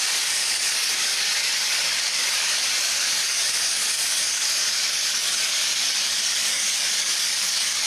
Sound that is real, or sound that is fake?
fake